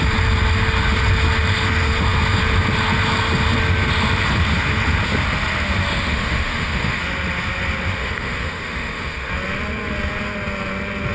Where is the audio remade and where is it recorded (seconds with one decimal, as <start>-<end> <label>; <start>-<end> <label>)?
0.0-6.1 recorded; 6.1-7.0 remade; 7.0-7.9 recorded; 7.9-9.3 remade; 9.3-11.1 recorded